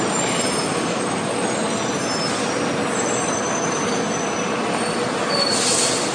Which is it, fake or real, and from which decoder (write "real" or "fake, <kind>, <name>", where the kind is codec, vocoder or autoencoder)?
real